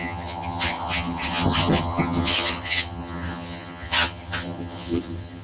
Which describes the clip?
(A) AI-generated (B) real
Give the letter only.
A